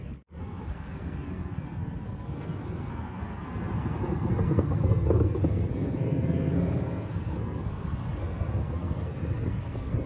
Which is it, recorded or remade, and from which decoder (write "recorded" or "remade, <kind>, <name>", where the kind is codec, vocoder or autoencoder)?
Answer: remade, codec, SNAC